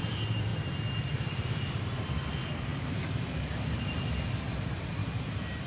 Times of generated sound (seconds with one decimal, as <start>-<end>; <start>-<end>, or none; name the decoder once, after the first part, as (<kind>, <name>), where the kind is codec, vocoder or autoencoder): 0.0-0.5 (vocoder, BigVGAN v2); 1.1-5.0